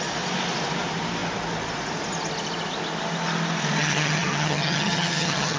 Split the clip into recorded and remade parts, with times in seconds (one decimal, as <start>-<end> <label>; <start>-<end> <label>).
0.0-3.8 recorded; 3.8-5.6 remade